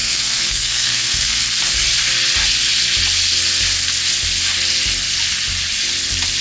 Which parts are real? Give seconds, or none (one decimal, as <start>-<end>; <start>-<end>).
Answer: 1.4-6.4